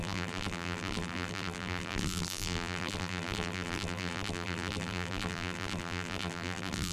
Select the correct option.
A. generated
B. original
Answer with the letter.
A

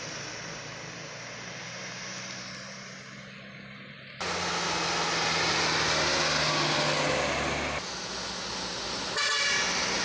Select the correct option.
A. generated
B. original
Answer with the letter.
B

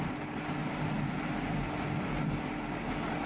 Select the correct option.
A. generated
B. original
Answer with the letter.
B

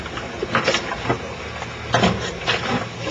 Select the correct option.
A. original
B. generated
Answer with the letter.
A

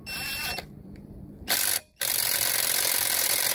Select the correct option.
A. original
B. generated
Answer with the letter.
B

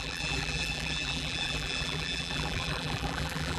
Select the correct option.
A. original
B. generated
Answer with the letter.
B